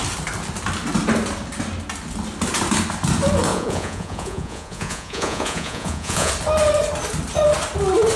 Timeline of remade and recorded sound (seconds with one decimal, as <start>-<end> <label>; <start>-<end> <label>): 0.0-3.5 recorded; 3.5-6.3 remade; 6.3-8.2 recorded